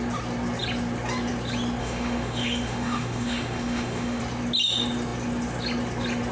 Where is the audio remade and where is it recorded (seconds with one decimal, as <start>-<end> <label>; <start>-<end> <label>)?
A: 0.0-1.8 recorded; 1.8-4.2 remade; 4.2-6.3 recorded